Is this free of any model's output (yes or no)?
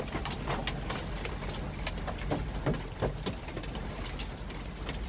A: yes